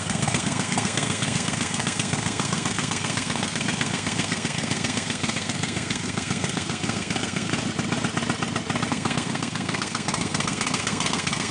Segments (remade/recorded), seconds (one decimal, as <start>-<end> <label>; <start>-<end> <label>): 0.0-7.5 remade; 7.5-8.9 recorded; 8.9-11.5 remade